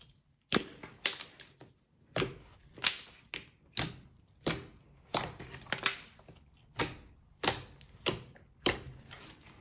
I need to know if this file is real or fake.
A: real